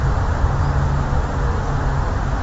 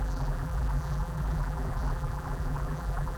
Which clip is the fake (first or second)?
second